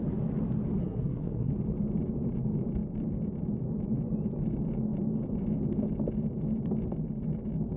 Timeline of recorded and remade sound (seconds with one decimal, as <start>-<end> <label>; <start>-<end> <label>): 0.0-0.8 recorded; 0.8-1.5 remade; 1.5-7.8 recorded